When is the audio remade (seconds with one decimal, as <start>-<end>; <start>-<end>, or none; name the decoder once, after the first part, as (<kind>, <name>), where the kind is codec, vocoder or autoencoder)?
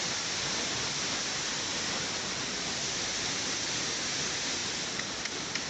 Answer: none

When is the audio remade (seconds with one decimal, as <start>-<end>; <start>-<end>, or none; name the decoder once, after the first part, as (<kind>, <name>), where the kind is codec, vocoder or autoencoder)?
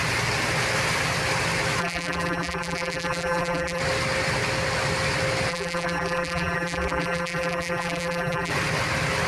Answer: 1.8-3.8 (vocoder, BigVGAN v2); 5.5-8.5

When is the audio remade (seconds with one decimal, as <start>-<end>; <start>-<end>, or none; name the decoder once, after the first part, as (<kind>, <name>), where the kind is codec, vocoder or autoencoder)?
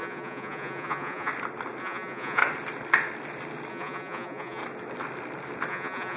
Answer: 0.0-1.3 (vocoder, Vocos); 1.8-2.4; 3.7-4.6; 5.7-6.2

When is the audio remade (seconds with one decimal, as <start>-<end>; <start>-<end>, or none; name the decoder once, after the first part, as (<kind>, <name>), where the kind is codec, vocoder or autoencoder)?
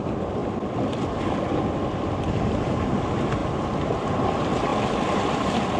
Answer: none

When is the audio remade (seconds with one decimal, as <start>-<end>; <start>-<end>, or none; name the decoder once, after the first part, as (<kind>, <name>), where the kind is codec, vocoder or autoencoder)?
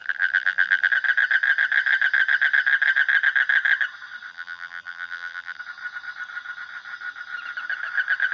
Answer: 0.0-0.9 (vocoder, BigVGAN v2); 4.3-5.6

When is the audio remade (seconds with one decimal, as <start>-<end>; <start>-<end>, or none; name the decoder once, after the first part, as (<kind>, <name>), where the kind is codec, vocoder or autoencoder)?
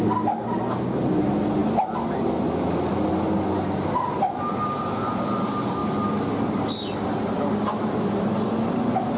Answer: none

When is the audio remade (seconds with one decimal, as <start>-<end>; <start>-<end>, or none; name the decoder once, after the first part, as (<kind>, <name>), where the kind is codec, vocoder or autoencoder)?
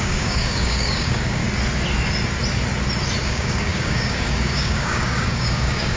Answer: 0.0-1.4 (codec, DAC); 3.2-6.0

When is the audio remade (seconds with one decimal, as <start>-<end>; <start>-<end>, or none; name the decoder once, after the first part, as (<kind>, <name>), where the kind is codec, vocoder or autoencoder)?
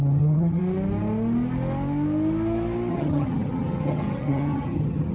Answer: 0.0-0.6 (vocoder, HiFi-GAN); 2.9-5.1